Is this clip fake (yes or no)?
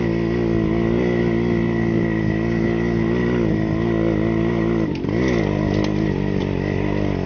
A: no